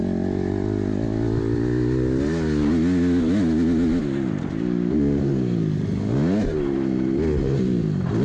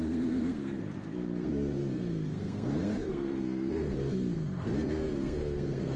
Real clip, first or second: first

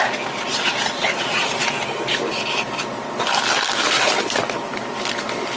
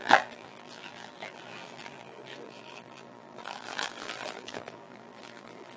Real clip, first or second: first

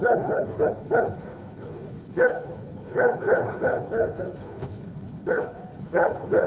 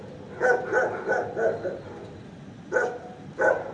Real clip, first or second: second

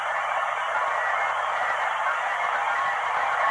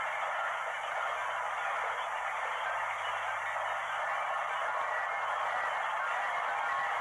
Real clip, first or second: second